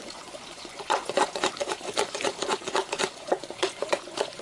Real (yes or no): no